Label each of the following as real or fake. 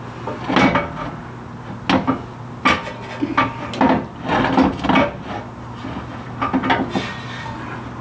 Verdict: real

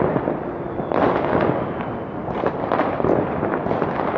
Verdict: fake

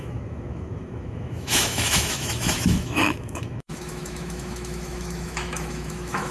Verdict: fake